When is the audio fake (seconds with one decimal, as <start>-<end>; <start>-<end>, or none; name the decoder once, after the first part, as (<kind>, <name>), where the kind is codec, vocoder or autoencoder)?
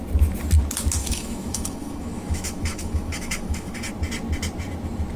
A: 1.0-3.9 (autoencoder, DAC-VAE)